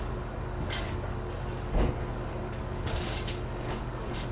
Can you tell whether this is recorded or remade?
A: remade